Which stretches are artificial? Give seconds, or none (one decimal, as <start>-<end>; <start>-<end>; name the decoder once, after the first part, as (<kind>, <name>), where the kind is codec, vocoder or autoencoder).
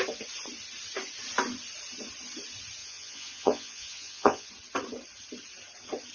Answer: 2.8-4.5 (vocoder, Vocos)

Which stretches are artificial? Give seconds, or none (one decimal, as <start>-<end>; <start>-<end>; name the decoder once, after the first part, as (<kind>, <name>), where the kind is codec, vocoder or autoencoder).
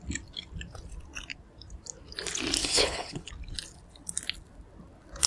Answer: 2.6-3.3 (codec, HILCodec)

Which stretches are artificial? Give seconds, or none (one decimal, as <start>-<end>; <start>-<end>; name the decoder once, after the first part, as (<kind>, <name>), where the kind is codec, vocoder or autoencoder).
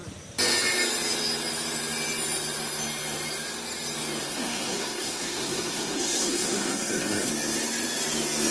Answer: 4.2-7.3 (codec, SNAC)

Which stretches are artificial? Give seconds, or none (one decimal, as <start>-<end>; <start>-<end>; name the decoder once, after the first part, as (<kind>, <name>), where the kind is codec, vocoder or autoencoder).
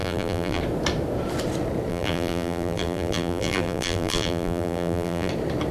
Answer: 0.0-0.6 (vocoder, BigVGAN v2); 1.9-5.3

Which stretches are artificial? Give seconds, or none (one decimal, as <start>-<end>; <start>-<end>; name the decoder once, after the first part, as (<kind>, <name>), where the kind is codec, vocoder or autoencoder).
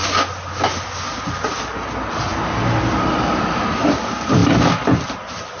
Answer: 1.2-2.3 (vocoder, BigVGAN v2); 3.1-4.4; 5.0-5.6